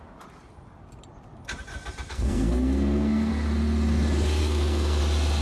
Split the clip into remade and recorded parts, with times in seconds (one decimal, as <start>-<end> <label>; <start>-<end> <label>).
0.0-2.1 recorded; 2.1-3.3 remade; 3.3-4.4 recorded; 4.4-5.0 remade; 5.0-5.4 recorded